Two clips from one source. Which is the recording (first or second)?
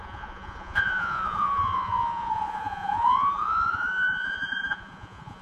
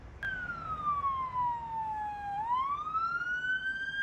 second